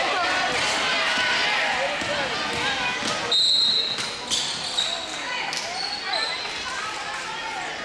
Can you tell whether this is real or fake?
real